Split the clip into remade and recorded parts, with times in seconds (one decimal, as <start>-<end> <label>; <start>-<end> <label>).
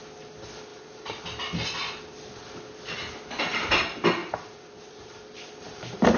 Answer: 0.0-0.7 recorded; 0.7-1.2 remade; 1.2-4.2 recorded; 4.2-6.2 remade